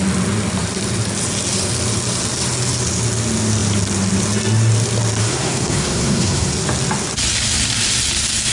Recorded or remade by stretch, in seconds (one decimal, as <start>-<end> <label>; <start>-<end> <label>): 0.0-5.2 recorded; 5.2-6.5 remade; 6.5-8.5 recorded